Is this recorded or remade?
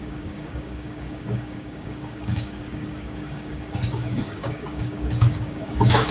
remade